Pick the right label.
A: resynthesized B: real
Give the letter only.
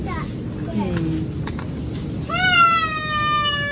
B